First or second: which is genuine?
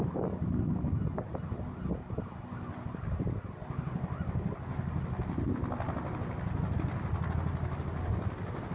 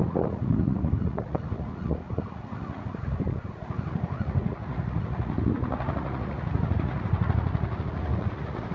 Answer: first